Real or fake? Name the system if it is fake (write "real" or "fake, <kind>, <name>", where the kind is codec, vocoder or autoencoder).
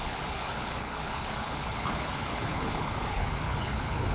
fake, codec, HILCodec